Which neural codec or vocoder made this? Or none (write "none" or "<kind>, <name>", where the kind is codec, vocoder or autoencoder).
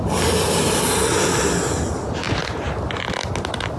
none